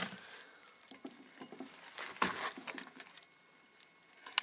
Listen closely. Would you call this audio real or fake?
real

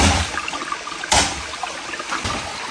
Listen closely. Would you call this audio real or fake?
real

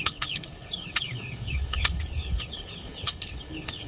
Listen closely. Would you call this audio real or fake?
fake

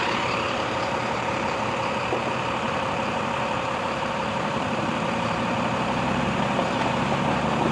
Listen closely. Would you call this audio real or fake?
fake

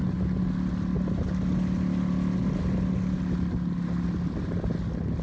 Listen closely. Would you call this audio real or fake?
real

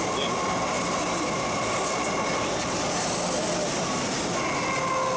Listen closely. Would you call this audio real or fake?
real